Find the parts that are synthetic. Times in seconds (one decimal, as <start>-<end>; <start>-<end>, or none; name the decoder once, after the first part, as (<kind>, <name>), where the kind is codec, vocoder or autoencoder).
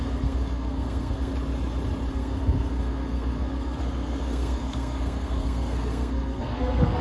0.0-1.3 (codec, SNAC); 2.1-7.0